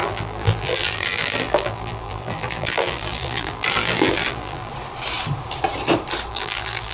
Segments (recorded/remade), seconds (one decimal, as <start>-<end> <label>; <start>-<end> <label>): 0.0-4.7 remade; 4.7-6.3 recorded; 6.3-6.9 remade